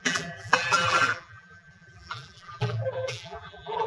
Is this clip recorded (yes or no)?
no